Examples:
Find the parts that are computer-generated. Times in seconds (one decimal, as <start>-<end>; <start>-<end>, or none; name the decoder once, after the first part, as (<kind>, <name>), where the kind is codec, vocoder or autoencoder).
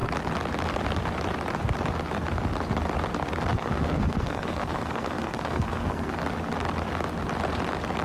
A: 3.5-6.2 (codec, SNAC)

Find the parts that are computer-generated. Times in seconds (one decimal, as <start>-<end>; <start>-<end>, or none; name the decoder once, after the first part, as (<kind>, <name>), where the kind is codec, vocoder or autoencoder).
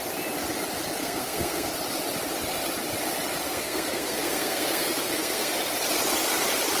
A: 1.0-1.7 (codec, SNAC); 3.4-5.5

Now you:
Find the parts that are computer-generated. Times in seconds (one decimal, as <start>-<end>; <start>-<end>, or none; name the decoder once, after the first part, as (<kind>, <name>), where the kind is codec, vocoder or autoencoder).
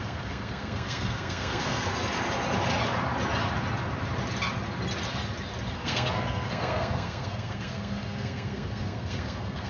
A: 0.0-1.9 (codec, SNAC); 5.7-9.7